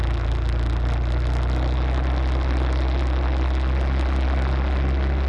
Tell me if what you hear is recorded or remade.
recorded